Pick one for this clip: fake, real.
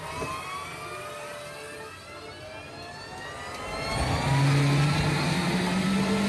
real